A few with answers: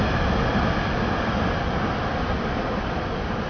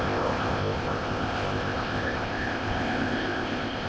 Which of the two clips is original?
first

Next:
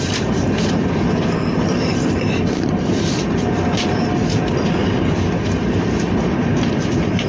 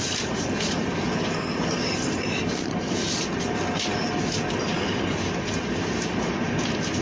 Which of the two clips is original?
second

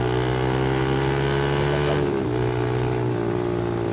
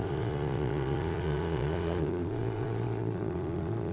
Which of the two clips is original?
first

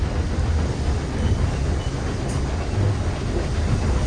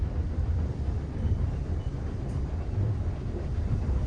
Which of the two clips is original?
first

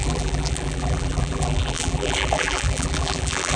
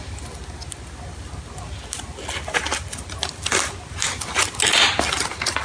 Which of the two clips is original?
second